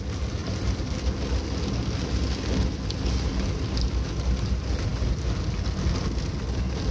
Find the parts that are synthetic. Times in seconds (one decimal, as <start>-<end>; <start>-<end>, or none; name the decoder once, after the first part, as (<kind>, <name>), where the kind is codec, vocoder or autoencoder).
0.4-1.0 (vocoder, BigVGAN v2)